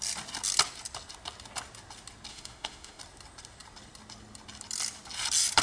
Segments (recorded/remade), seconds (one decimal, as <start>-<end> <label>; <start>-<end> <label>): 0.0-2.3 recorded; 2.3-3.0 remade; 3.0-5.6 recorded